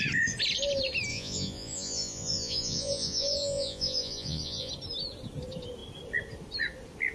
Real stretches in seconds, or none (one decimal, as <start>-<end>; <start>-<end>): 0.0-1.1; 4.7-7.1